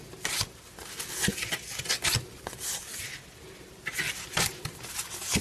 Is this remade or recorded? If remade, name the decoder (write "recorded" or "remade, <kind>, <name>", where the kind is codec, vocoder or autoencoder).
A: recorded